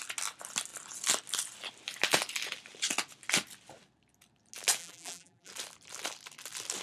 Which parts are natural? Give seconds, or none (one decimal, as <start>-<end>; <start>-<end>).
0.0-4.8; 5.5-6.8